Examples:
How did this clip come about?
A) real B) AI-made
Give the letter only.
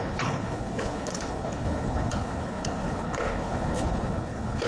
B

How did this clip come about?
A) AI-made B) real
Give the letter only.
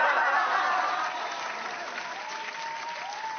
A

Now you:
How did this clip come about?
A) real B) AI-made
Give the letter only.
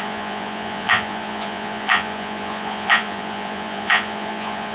B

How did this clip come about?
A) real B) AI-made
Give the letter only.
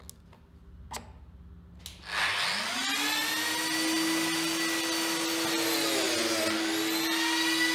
A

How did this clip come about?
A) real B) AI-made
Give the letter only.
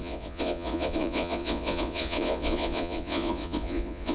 B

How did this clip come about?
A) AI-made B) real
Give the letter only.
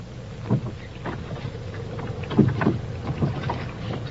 B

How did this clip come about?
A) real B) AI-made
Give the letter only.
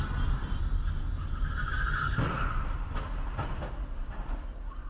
A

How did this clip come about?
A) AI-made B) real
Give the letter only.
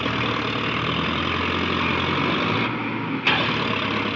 B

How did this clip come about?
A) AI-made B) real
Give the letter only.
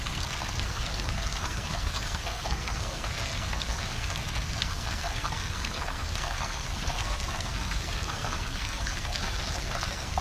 A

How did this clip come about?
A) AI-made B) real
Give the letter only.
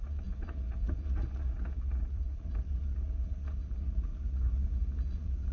A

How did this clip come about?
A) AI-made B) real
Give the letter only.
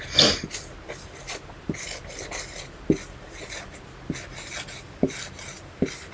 B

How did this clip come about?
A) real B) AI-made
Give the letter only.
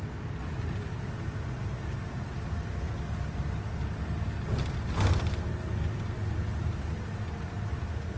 A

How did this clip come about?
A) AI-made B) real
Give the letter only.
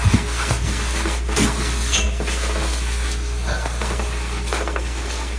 A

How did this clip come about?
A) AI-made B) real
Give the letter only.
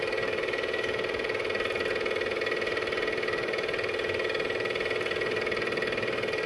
B